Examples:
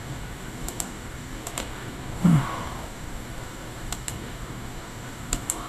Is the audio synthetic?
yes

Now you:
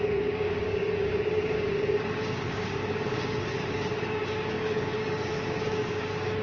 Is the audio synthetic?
yes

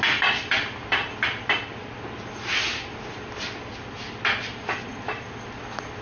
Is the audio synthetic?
no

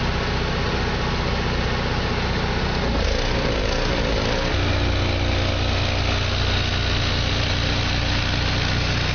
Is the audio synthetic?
no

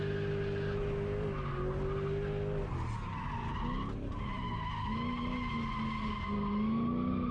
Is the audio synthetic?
no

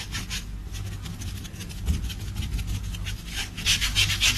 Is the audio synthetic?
yes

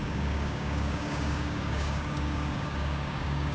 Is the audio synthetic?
yes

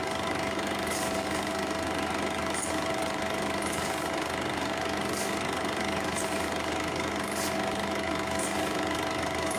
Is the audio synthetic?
yes